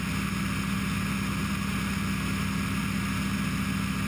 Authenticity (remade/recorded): recorded